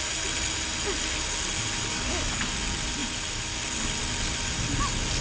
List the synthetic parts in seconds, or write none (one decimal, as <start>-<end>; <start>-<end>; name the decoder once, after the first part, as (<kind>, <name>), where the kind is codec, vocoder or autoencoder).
1.9-2.5 (codec, DAC)